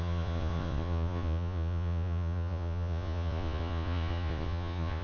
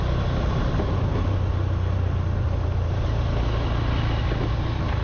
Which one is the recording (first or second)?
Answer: second